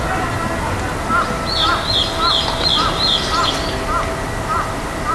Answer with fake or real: real